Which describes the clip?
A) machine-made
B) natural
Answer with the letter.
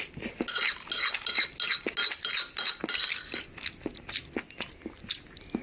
B